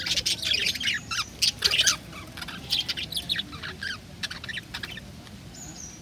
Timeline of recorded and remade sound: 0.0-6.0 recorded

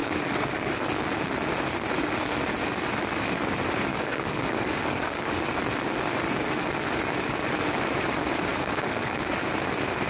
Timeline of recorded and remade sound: 0.0-0.7 remade; 0.7-3.9 recorded; 3.9-5.4 remade; 5.4-8.5 recorded; 8.5-9.4 remade; 9.4-10.1 recorded

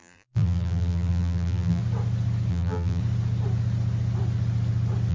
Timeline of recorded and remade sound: 0.0-1.8 remade; 1.8-2.5 recorded; 2.5-3.0 remade; 3.0-5.1 recorded

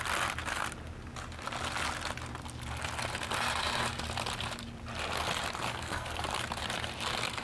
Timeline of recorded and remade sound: 0.0-5.7 recorded; 5.7-6.2 remade; 6.2-7.4 recorded

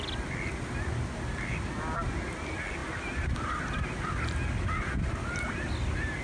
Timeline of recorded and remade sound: 0.0-6.2 recorded

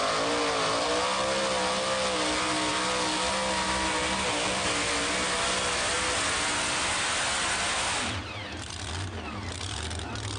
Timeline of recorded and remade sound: 0.0-10.4 recorded

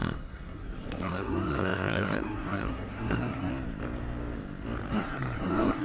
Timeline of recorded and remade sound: 0.0-3.5 remade; 3.5-4.9 recorded; 4.9-5.8 remade